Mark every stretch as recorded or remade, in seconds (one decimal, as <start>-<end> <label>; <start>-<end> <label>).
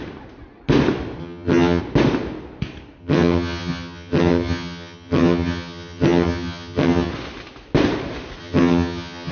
0.0-1.2 recorded; 1.2-1.8 remade; 1.8-3.0 recorded; 3.0-7.1 remade; 7.1-8.4 recorded; 8.4-9.3 remade